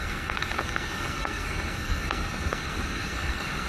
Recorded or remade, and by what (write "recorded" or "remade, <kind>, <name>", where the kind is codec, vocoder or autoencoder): remade, codec, SNAC